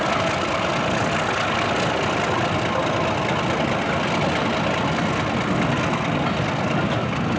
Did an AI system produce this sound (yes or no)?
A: no